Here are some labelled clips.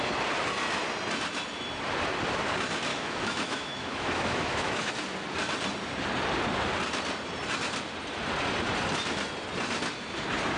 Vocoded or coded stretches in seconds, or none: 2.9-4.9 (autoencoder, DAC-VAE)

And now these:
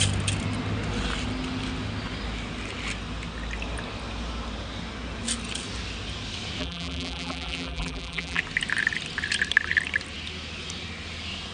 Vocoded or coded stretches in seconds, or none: 6.6-8.4 (vocoder, BigVGAN v2)

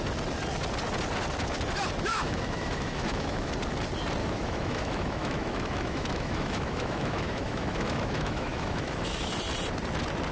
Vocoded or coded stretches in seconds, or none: 2.1-3.5 (autoencoder, DAC-VAE); 4.2-9.3

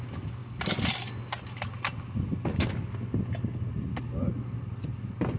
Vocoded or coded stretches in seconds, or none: none

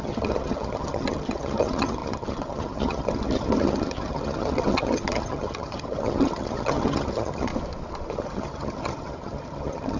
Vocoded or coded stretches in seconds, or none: 0.0-7.5 (vocoder, HiFi-GAN); 8.1-10.0